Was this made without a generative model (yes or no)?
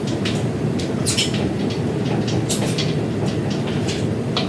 yes